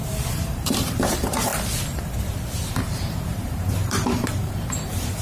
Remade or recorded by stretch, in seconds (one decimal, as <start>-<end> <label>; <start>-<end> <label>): 0.0-1.5 remade; 1.5-2.7 recorded; 2.7-5.2 remade